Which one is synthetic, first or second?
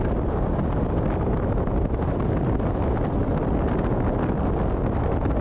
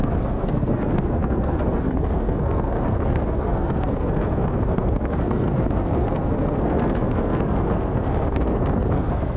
second